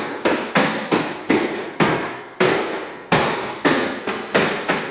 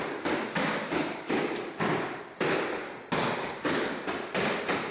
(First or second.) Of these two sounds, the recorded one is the second